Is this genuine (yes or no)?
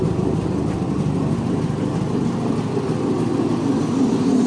yes